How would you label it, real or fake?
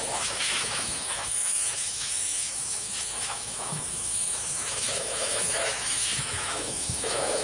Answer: fake